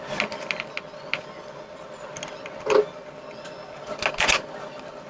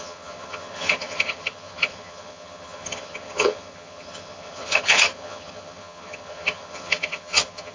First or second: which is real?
first